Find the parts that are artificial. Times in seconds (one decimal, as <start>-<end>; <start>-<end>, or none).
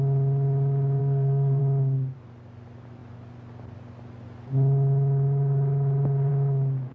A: 1.0-1.6